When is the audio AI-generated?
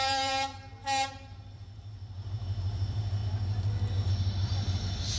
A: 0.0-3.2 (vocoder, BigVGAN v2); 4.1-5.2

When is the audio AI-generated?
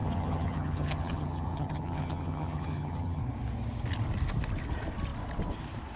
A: 0.0-3.2 (vocoder, HiFi-GAN)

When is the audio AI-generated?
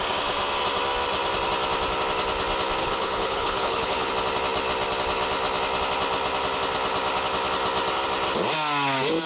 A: 2.8-4.1 (codec, HILCodec)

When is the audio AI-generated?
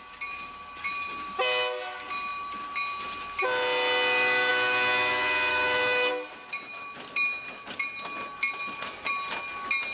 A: 5.5-6.1 (autoencoder, DAC-VAE)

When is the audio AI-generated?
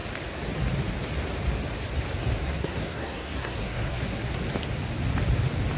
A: 2.4-4.4 (codec, SNAC)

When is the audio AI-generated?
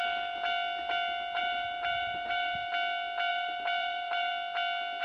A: 1.4-2.7 (vocoder, BigVGAN v2); 3.3-4.3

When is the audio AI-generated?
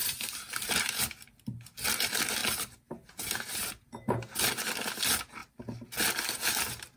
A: 0.0-1.0 (vocoder, BigVGAN v2)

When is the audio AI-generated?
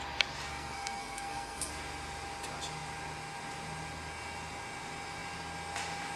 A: 0.5-1.7 (codec, SNAC)